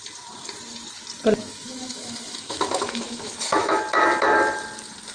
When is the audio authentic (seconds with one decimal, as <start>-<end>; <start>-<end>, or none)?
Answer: 0.0-1.4; 3.8-5.1